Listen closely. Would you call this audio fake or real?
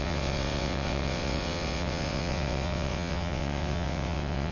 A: fake